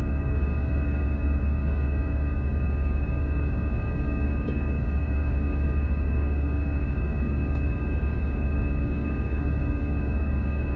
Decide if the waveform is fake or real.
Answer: fake